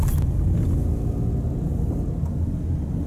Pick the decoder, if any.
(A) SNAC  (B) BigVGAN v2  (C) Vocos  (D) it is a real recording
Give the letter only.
D